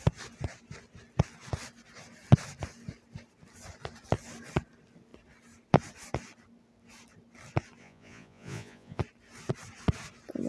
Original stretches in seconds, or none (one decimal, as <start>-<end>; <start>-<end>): 0.0-7.8; 9.0-10.5